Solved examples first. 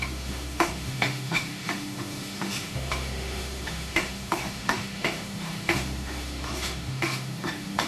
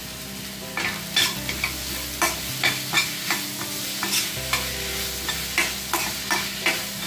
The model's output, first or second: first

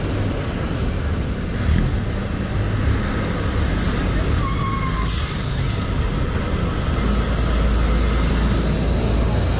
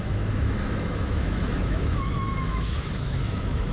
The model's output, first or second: second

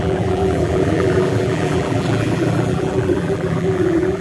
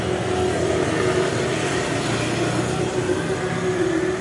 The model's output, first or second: first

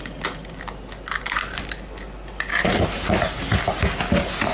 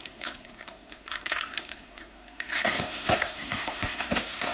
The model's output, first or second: second